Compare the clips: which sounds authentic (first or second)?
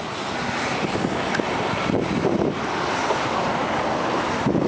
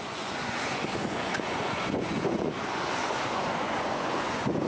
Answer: first